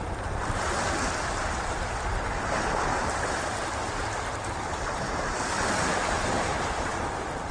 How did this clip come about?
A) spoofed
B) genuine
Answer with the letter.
B